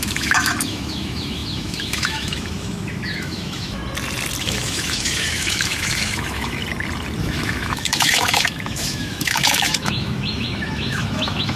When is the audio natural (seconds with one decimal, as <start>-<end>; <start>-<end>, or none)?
3.8-4.4; 6.6-7.2